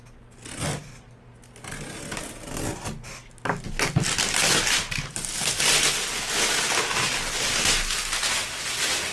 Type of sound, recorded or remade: recorded